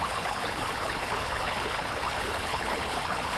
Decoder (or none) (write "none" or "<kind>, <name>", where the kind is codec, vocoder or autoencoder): codec, HILCodec